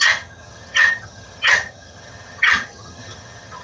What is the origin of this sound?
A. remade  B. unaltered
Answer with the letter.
A